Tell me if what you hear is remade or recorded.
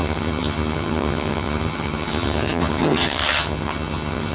remade